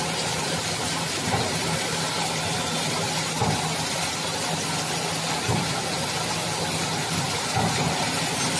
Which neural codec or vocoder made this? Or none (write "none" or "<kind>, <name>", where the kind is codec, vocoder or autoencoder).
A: none